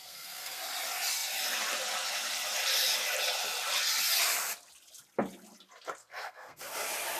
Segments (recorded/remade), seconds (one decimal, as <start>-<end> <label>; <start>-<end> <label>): 0.0-0.6 remade; 0.6-6.0 recorded; 6.0-6.7 remade; 6.7-7.2 recorded